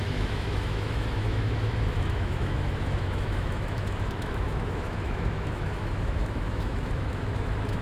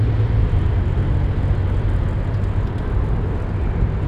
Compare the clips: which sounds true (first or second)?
second